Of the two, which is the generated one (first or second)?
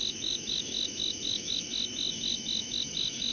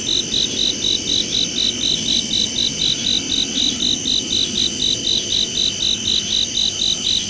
first